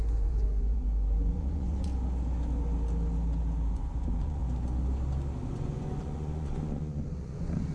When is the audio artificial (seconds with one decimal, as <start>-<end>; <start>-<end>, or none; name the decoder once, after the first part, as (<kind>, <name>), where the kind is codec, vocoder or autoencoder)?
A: 0.0-1.9 (vocoder, Vocos); 3.7-4.4; 5.5-7.7